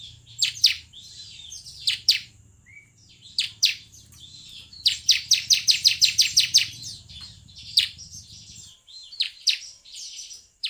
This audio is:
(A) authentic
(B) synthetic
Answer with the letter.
B